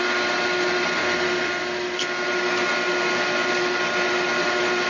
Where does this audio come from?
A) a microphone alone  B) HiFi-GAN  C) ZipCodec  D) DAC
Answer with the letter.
A